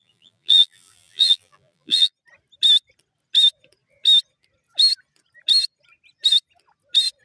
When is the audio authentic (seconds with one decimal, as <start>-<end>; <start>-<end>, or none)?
2.1-7.2